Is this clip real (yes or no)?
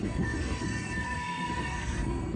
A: no